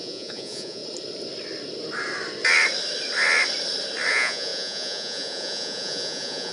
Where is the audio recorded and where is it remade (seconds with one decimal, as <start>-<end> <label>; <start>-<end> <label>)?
0.0-0.8 remade; 0.8-4.1 recorded; 4.1-6.5 remade